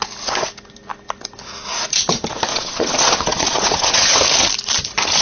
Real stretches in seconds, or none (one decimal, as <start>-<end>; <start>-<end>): 0.0-2.5; 4.2-5.2